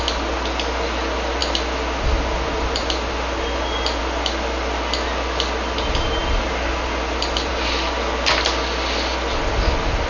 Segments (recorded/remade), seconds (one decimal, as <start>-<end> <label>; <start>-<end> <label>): 0.0-10.1 recorded